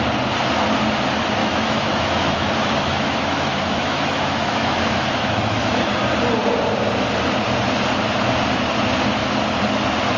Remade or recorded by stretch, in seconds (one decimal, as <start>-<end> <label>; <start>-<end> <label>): 0.0-1.4 recorded; 1.4-5.9 remade; 5.9-10.2 recorded

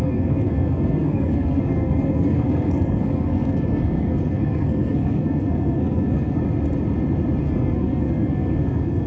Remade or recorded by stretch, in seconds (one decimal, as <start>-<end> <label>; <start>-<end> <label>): 0.0-6.4 remade; 6.4-7.4 recorded; 7.4-9.1 remade